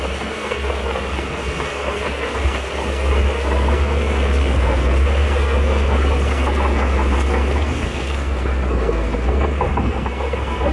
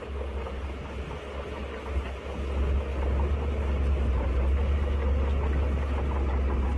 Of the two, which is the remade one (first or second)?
first